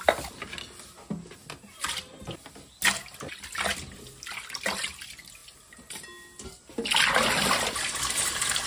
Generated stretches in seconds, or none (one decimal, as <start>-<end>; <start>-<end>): none